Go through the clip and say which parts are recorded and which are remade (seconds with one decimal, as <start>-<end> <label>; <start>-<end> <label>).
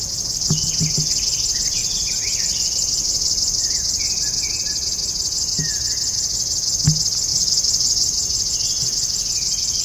0.0-1.8 recorded; 1.8-3.8 remade; 3.8-7.3 recorded; 7.3-8.5 remade; 8.5-9.8 recorded